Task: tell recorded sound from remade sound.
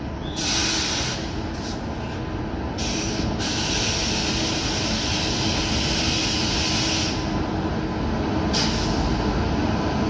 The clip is recorded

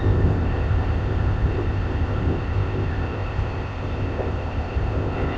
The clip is remade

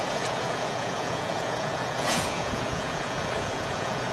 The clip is remade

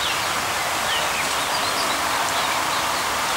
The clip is recorded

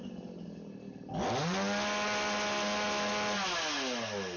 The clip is recorded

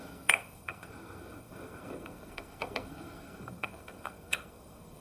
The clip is remade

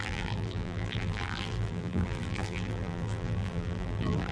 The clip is remade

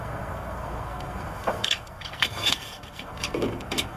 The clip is remade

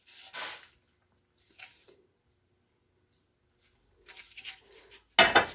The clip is recorded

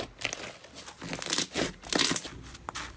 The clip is recorded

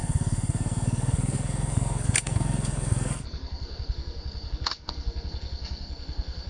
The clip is remade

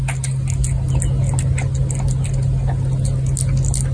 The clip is recorded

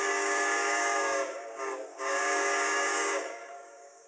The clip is remade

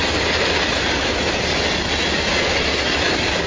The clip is recorded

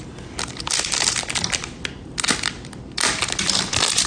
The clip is recorded